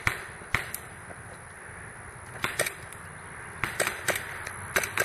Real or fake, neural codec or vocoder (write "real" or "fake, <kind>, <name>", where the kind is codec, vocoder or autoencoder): real